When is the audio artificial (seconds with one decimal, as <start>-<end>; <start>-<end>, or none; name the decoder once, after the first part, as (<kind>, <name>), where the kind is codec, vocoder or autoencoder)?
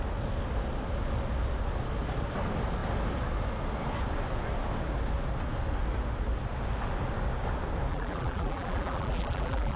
7.9-9.8 (vocoder, BigVGAN v2)